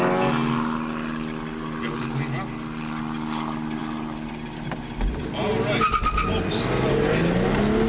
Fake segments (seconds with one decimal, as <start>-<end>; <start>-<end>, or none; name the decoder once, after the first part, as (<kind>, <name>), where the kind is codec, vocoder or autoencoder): none